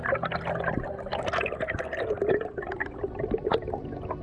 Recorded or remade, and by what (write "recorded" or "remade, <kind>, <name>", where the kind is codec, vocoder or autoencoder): remade, vocoder, BigVGAN v2